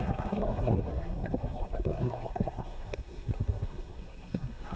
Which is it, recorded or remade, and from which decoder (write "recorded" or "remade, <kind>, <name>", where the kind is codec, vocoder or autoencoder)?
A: remade, codec, SNAC